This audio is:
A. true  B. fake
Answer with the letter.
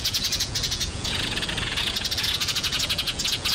B